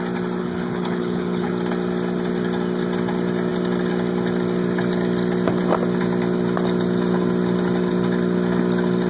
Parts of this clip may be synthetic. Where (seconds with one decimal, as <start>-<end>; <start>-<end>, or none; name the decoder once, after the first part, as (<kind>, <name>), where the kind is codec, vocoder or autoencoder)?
0.4-1.5 (codec, HILCodec)